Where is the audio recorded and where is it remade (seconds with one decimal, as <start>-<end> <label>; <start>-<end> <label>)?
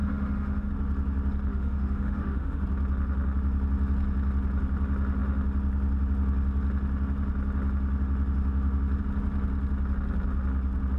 0.0-0.7 remade; 0.7-1.5 recorded; 1.5-2.6 remade; 2.6-11.0 recorded